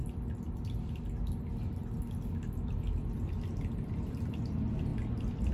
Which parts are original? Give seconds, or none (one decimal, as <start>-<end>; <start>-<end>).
0.0-5.5